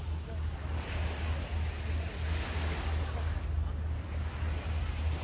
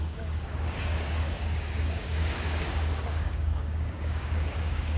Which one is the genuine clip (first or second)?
first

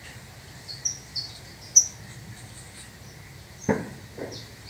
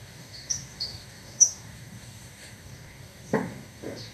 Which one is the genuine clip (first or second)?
first